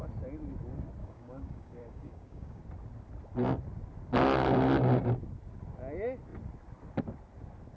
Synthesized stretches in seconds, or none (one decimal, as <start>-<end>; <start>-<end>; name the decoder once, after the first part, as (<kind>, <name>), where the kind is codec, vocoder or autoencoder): 1.0-2.6 (codec, DAC)